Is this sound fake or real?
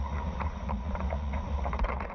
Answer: fake